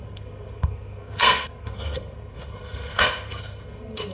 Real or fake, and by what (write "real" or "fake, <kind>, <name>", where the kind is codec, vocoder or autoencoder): fake, codec, SNAC